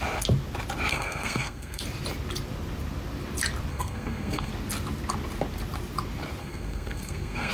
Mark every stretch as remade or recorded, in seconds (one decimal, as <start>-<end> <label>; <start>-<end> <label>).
0.0-0.9 recorded; 0.9-1.8 remade; 1.8-3.7 recorded; 3.7-4.5 remade; 4.5-6.4 recorded; 6.4-7.5 remade